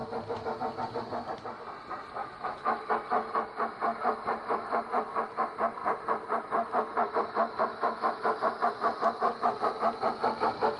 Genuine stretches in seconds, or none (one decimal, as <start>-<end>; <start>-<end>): 0.0-2.2; 2.9-7.7; 8.4-10.8